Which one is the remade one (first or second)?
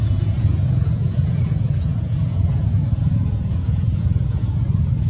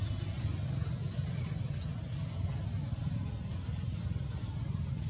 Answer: first